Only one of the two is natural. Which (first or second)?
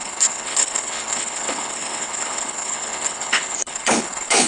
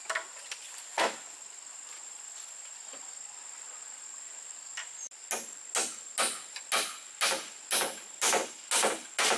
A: second